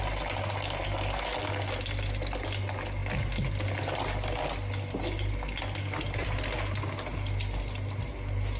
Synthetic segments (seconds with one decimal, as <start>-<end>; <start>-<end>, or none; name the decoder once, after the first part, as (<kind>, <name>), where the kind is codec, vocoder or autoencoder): none